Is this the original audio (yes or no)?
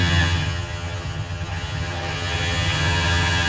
no